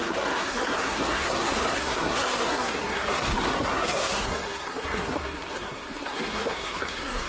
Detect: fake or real fake